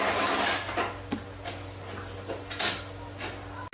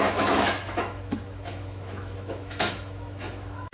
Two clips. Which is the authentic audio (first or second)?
first